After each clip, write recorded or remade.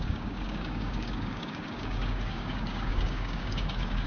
remade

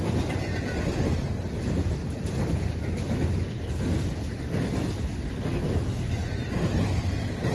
recorded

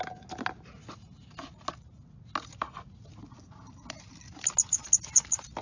recorded